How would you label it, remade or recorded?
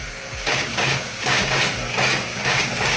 remade